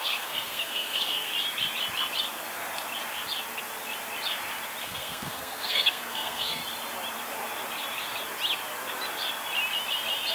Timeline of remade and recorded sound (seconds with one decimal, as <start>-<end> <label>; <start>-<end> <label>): 0.0-1.3 remade; 1.3-4.8 recorded; 4.8-6.6 remade; 6.6-10.3 recorded